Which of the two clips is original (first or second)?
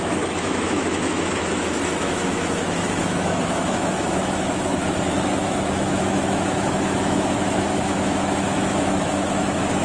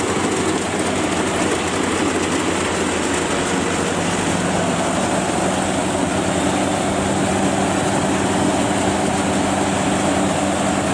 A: second